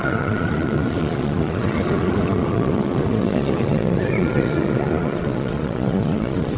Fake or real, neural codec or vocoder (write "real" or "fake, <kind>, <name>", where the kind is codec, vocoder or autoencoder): fake, vocoder, Vocos